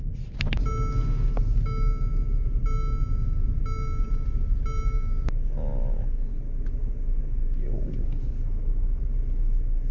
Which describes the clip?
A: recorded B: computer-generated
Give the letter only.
A